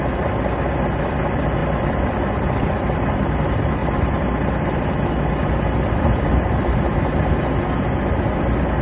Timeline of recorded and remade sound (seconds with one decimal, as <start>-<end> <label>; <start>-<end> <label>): 0.0-1.6 recorded; 1.6-3.1 remade; 3.1-3.8 recorded; 3.8-4.9 remade; 4.9-8.8 recorded